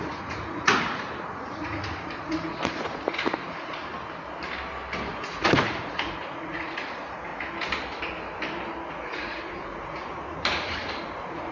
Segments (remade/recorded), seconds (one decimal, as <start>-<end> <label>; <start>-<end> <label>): 0.0-3.9 remade; 3.9-5.1 recorded; 5.1-7.3 remade; 7.3-8.9 recorded; 8.9-11.5 remade